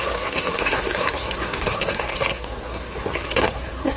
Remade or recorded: remade